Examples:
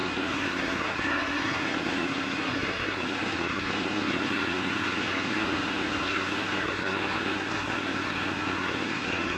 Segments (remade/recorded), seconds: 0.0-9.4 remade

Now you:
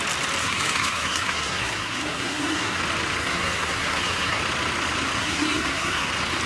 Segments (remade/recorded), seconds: 0.0-0.4 recorded; 0.4-2.8 remade; 2.8-3.2 recorded; 3.2-4.4 remade; 4.4-5.2 recorded; 5.2-6.1 remade; 6.1-6.5 recorded